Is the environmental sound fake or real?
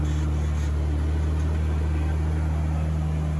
real